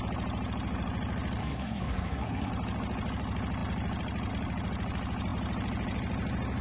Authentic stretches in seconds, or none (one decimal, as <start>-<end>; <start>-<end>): 0.0-1.4; 2.5-6.6